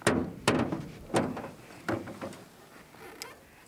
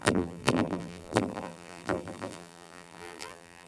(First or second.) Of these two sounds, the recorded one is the first